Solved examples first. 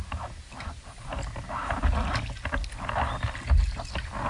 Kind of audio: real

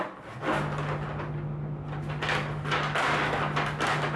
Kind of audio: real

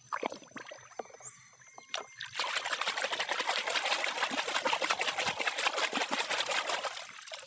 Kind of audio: real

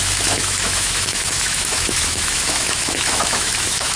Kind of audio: fake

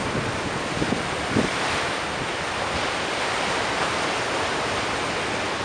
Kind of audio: real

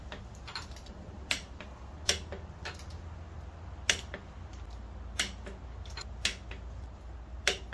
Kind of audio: real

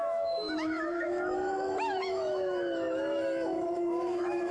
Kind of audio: fake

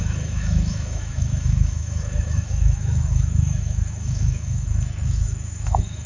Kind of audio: fake